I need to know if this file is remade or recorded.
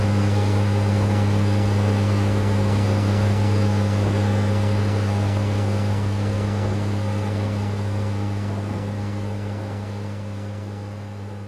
remade